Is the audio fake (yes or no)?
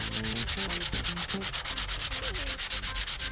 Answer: no